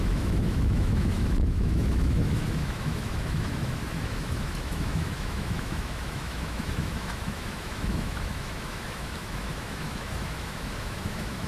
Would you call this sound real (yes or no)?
no